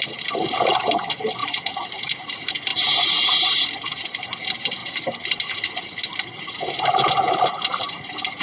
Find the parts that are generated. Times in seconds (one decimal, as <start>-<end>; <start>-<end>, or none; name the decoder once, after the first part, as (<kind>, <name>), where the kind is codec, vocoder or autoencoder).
1.4-2.3 (vocoder, BigVGAN v2); 2.7-3.7; 4.8-8.4

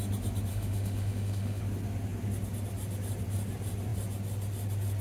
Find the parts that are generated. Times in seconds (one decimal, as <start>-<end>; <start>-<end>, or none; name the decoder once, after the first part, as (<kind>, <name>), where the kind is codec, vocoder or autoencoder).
0.5-1.6 (autoencoder, DAC-VAE)

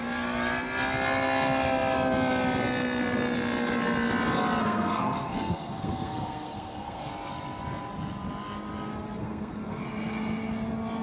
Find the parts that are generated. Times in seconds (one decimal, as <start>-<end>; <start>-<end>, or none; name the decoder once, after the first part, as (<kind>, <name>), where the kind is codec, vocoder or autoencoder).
4.6-7.1 (codec, SNAC); 9.2-9.8

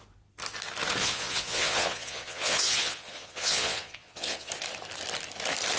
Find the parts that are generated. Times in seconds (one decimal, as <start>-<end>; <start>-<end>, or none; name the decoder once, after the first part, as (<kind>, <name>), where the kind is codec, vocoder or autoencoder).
1.0-4.5 (vocoder, Vocos)

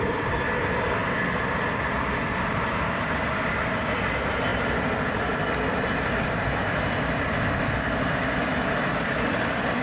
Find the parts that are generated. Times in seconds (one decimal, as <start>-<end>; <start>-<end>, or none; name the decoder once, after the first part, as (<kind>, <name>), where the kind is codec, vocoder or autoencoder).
none

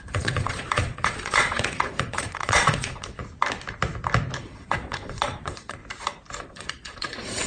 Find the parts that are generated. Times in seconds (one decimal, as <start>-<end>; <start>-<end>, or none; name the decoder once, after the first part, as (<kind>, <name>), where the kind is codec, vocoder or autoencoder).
0.0-3.2 (vocoder, Vocos); 4.4-5.8; 6.4-7.5

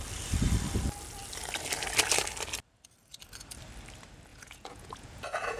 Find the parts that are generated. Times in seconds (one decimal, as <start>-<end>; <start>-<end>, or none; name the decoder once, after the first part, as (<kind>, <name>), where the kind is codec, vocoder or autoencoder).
4.3-5.6 (vocoder, Vocos)